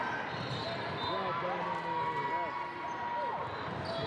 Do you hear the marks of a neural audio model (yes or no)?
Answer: no